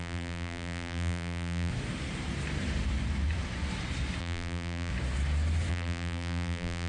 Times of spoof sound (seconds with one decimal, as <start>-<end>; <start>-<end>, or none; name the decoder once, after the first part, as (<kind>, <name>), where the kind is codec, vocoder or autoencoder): 0.0-1.7 (vocoder, BigVGAN v2); 4.2-4.9; 5.7-6.9